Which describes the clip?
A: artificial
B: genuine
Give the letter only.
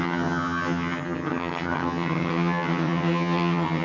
A